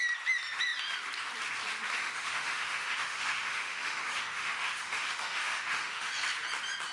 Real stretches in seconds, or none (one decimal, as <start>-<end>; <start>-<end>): 0.0-2.0; 6.1-6.9